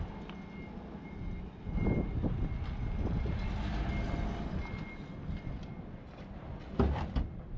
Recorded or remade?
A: recorded